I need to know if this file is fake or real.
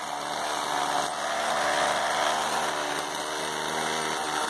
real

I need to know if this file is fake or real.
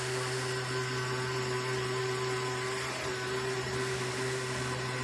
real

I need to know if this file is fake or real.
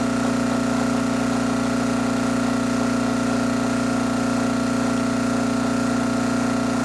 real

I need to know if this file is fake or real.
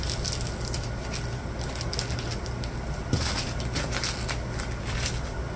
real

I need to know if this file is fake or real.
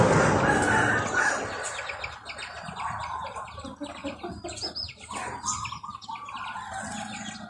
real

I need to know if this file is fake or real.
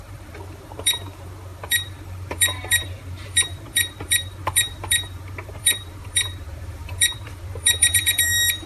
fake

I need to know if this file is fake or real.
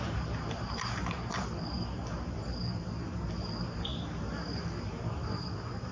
fake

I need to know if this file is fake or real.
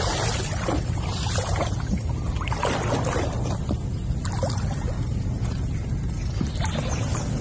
fake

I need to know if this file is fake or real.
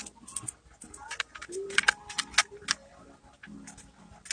real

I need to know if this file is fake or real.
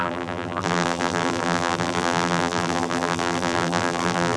fake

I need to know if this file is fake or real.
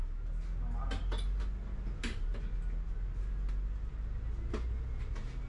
real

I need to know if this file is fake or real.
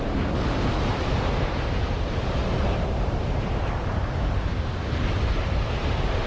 fake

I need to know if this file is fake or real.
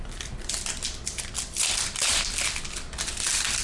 real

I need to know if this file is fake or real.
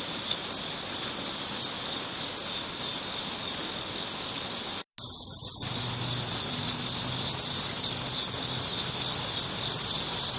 real